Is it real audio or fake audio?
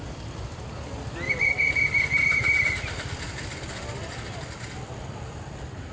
real